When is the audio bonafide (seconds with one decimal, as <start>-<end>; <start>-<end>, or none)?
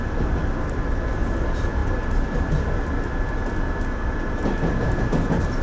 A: 0.0-5.6